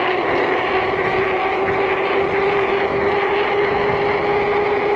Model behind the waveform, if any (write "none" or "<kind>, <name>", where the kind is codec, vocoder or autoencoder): none